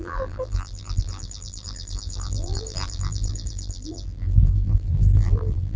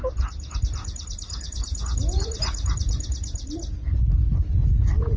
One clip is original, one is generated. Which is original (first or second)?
second